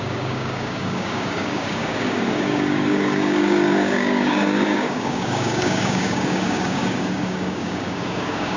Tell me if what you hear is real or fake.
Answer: fake